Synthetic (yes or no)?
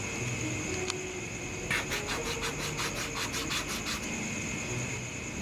no